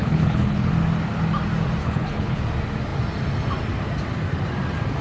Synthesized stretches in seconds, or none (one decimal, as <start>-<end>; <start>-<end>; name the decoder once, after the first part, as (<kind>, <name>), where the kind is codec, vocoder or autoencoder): 0.0-0.7 (codec, HILCodec); 1.8-2.4